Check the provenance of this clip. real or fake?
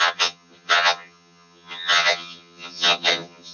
fake